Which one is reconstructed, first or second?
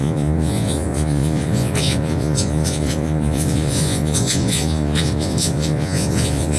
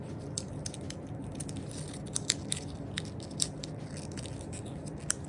first